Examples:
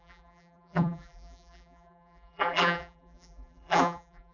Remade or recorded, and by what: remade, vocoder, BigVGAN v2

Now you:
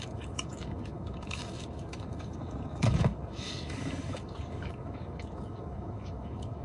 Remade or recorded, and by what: remade, codec, DAC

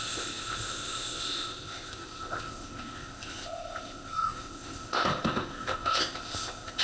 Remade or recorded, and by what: remade, codec, ZipCodec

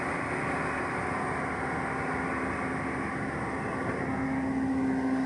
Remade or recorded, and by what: recorded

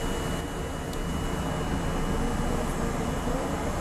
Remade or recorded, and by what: recorded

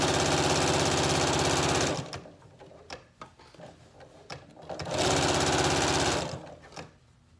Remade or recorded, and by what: recorded